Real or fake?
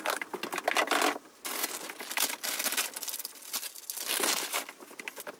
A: real